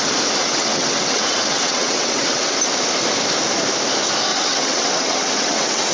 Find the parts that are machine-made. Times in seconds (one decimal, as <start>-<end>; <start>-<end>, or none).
0.4-2.6; 4.3-5.9